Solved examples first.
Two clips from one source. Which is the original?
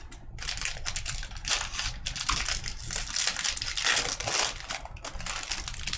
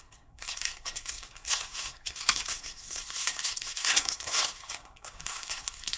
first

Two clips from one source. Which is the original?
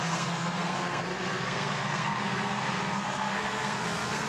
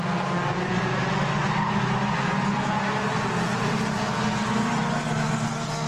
second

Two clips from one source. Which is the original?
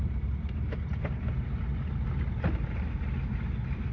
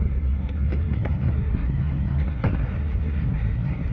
first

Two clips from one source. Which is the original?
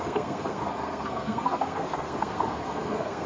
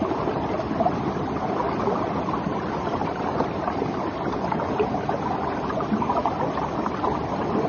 second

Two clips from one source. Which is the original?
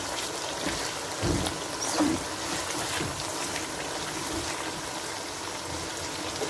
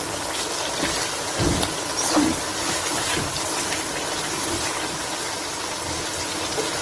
first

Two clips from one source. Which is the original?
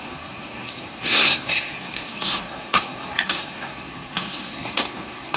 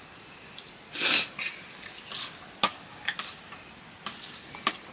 second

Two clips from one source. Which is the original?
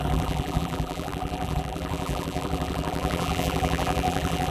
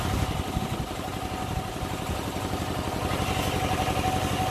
second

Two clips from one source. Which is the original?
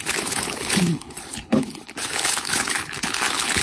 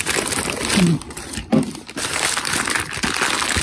second